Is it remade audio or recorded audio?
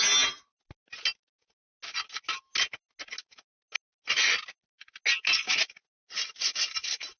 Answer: recorded